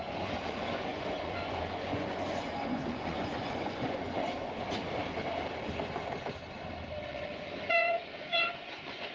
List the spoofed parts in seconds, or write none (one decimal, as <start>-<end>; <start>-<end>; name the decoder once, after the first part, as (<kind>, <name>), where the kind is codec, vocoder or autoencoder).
0.0-4.2 (vocoder, Vocos); 7.1-9.1